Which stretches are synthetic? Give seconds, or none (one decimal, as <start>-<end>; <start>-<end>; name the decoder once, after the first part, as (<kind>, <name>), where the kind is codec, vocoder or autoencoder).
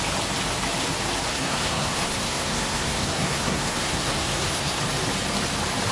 1.3-4.8 (codec, SNAC)